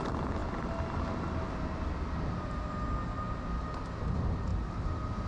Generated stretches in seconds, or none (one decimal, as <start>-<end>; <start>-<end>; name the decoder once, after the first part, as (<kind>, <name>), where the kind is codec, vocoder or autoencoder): none